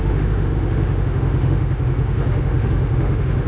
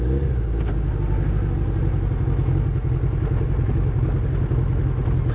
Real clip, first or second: second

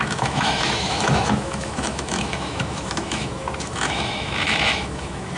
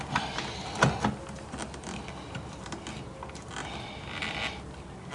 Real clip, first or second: second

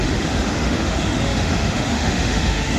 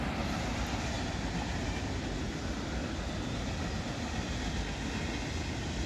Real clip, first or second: second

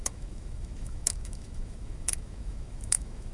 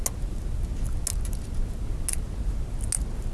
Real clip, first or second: second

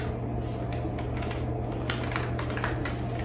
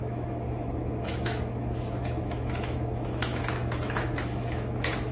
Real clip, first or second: first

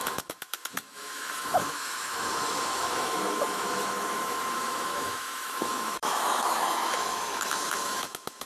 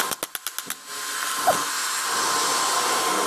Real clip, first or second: second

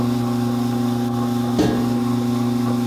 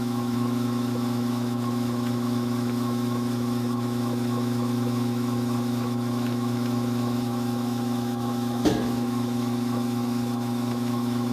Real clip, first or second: first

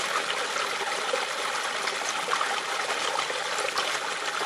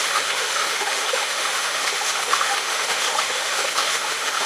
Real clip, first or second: first